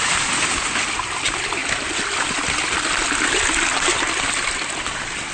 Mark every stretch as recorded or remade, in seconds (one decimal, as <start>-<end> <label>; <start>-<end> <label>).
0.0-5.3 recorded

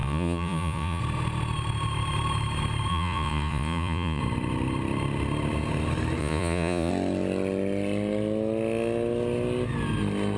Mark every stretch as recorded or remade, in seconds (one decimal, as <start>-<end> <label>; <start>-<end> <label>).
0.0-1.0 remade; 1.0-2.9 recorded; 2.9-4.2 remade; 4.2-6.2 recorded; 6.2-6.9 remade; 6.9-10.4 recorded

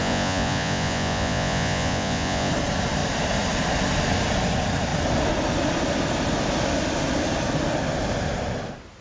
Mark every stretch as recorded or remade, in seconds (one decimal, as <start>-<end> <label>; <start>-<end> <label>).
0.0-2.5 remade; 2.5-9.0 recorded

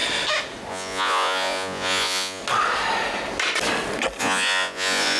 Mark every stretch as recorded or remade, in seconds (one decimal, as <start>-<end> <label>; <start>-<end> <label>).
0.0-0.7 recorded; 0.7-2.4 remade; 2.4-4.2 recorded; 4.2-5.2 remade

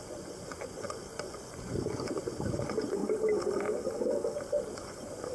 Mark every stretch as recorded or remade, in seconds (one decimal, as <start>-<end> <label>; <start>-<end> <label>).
0.0-3.0 remade; 3.0-4.7 recorded; 4.7-5.3 remade

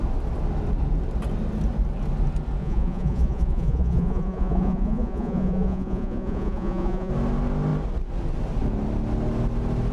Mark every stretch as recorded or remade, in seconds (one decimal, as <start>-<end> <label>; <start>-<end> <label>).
0.0-2.6 recorded; 2.6-7.1 remade; 7.1-9.9 recorded

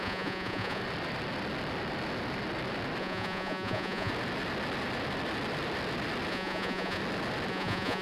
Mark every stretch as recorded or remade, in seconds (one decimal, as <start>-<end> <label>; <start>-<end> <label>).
0.0-0.8 remade; 0.8-3.0 recorded; 3.0-4.1 remade; 4.1-6.3 recorded; 6.3-7.0 remade; 7.0-7.5 recorded; 7.5-8.0 remade

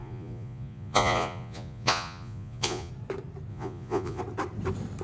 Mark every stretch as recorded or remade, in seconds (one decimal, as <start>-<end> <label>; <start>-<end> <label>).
0.0-2.9 remade; 2.9-3.5 recorded; 3.5-4.2 remade; 4.2-5.0 recorded